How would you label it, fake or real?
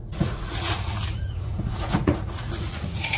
fake